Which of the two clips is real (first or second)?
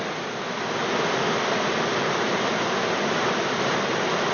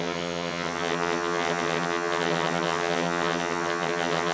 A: first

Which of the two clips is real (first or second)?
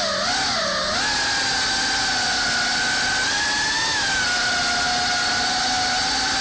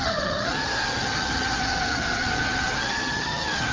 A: first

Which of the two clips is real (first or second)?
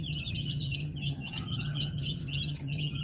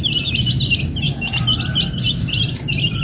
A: second